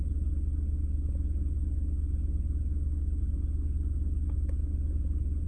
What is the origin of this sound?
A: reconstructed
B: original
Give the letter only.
B